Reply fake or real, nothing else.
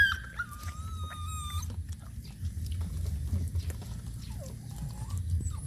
real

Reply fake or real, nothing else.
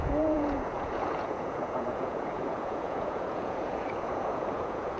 fake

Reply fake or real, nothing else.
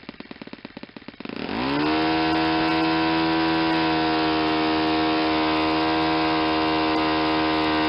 real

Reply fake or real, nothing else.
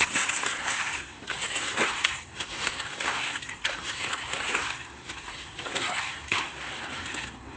fake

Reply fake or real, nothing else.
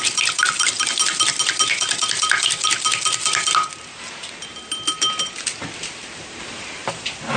real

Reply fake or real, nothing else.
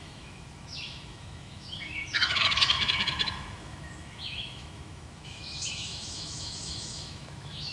fake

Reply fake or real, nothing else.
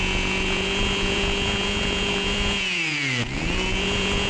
fake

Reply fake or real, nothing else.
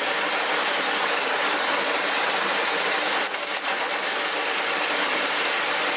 real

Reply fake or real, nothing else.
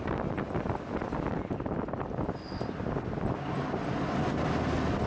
real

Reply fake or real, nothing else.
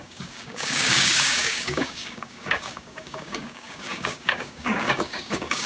fake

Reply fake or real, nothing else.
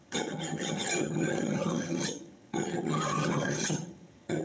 fake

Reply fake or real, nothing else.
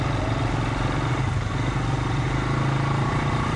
real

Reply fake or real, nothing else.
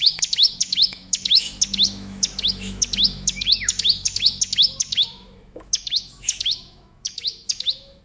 fake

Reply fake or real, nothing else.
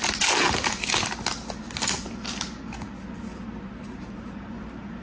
real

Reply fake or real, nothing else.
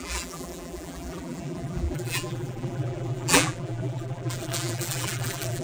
fake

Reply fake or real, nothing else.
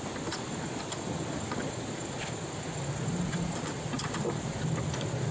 real